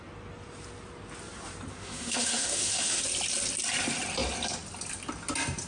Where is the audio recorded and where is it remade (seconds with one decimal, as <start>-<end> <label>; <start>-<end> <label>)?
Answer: 0.0-1.7 recorded; 1.7-3.0 remade; 3.0-5.7 recorded